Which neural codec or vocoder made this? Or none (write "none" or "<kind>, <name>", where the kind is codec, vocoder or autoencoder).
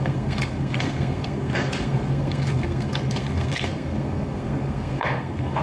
codec, SNAC